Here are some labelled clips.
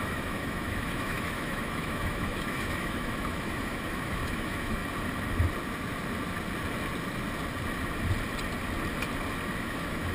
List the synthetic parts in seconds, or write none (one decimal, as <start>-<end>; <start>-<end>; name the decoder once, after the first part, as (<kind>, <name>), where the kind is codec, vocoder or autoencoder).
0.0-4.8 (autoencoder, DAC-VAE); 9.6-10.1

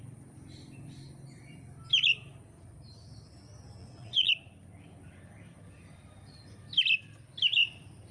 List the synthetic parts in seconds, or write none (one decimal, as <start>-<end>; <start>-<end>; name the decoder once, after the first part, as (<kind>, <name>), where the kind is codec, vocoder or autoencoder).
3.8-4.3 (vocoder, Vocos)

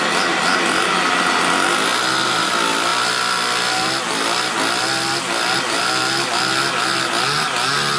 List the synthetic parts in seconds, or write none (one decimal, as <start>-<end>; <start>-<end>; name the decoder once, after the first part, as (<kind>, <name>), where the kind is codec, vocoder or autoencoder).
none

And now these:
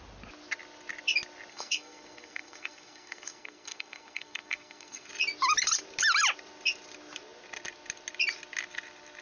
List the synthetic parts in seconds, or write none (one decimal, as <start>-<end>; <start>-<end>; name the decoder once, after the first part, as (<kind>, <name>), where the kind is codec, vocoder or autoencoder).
1.5-5.1 (codec, SNAC)

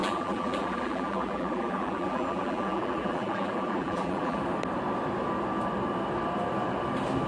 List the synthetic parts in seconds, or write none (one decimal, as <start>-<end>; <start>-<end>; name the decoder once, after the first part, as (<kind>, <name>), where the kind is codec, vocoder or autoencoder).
0.0-4.4 (vocoder, BigVGAN v2)

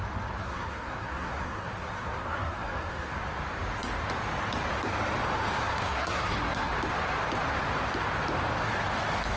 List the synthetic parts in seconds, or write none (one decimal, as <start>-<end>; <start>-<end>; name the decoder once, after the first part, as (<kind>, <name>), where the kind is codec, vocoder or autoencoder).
0.4-3.1 (codec, SNAC); 5.7-6.7